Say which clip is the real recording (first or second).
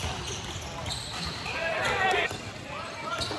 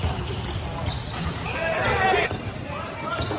second